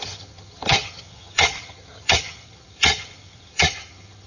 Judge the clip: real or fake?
fake